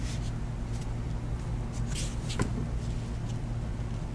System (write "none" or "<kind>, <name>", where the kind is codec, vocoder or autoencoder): none